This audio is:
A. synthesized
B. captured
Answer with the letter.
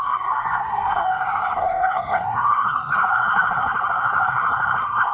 A